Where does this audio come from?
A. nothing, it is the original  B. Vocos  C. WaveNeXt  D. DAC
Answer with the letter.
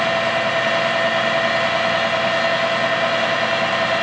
A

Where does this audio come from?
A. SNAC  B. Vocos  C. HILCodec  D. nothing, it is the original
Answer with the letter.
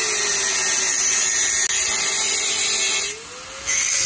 D